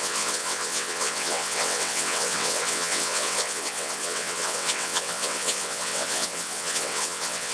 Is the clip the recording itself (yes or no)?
no